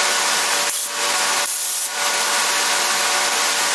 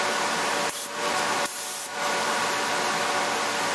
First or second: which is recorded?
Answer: first